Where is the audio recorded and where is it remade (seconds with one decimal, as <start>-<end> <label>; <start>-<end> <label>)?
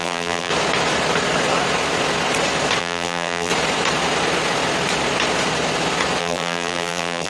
0.0-0.5 remade; 0.5-2.8 recorded; 2.8-3.5 remade; 3.5-6.2 recorded; 6.2-7.3 remade